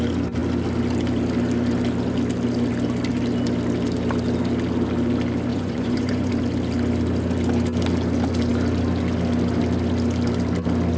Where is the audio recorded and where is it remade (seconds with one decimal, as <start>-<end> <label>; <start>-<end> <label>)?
0.0-5.5 recorded; 5.5-6.3 remade; 6.3-11.0 recorded